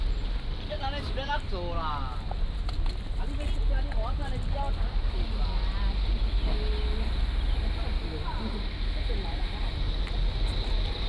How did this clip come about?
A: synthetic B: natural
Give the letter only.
B